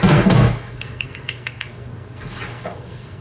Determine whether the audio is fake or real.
fake